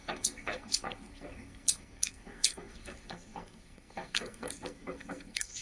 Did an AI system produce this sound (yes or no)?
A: yes